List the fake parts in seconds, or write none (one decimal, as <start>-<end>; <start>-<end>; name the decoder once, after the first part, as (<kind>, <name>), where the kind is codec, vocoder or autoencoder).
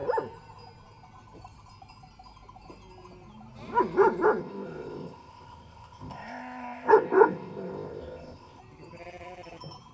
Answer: 4.4-8.6 (codec, ZipCodec)